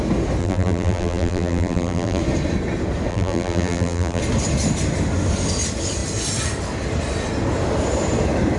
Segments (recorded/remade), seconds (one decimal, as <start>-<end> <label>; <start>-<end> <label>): 0.0-0.4 recorded; 0.4-2.2 remade; 2.2-3.1 recorded; 3.1-4.2 remade; 4.2-8.6 recorded

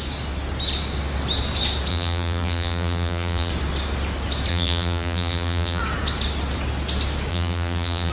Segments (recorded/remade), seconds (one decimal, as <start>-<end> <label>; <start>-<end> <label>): 0.0-1.9 recorded; 1.9-3.5 remade; 3.5-4.5 recorded; 4.5-5.8 remade; 5.8-7.3 recorded; 7.3-8.1 remade

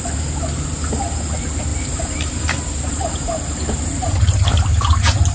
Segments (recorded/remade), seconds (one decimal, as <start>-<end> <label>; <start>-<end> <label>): 0.0-1.7 recorded; 1.7-4.2 remade; 4.2-5.3 recorded

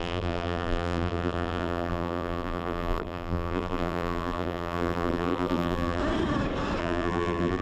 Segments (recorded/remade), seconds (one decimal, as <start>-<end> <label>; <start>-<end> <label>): 0.0-6.0 remade; 6.0-6.8 recorded; 6.8-7.6 remade

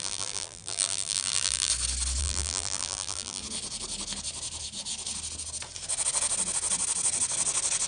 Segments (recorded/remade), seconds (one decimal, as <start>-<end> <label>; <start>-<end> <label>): 0.0-1.7 remade; 1.7-2.2 recorded; 2.2-3.4 remade; 3.4-7.9 recorded